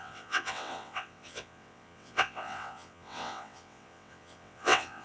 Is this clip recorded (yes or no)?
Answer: no